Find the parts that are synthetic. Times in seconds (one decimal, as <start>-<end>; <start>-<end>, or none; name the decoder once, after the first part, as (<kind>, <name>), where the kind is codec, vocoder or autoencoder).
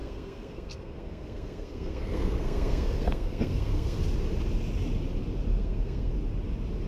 0.0-4.0 (codec, SNAC); 5.5-6.1